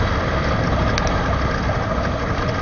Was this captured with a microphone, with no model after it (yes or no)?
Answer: yes